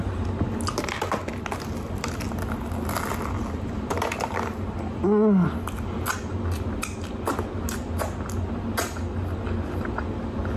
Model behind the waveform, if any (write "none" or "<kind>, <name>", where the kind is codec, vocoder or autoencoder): none